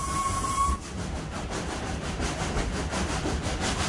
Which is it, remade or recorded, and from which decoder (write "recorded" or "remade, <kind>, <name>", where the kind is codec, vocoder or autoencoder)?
recorded